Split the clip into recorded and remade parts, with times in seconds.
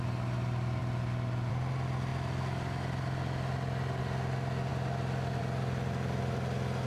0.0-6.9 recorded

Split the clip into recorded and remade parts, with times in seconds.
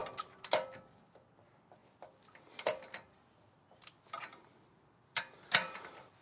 0.0-6.2 recorded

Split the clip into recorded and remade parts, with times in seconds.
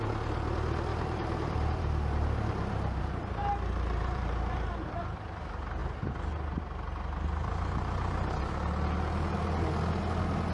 0.0-0.9 recorded; 0.9-5.0 remade; 5.0-10.5 recorded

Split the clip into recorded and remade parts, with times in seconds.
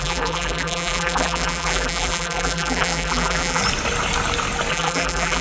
0.0-3.6 remade; 3.6-4.7 recorded; 4.7-5.4 remade